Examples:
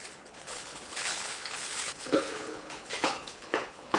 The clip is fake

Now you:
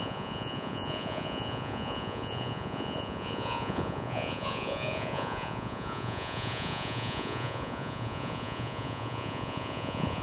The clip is fake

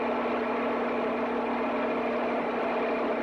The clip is real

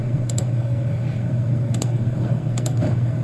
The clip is fake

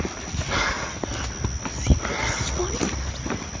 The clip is real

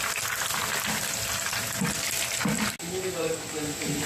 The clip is real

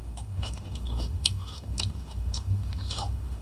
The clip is fake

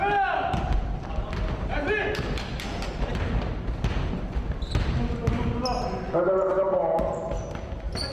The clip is real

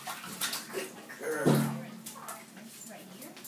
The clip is real